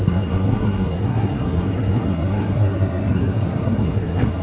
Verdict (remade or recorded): remade